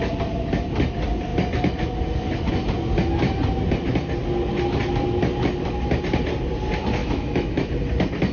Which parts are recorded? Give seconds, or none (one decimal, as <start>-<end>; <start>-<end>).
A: 0.0-7.0; 7.7-8.3